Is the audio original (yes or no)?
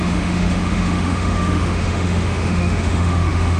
no